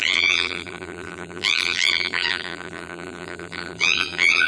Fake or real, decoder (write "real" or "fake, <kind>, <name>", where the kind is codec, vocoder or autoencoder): fake, vocoder, BigVGAN v2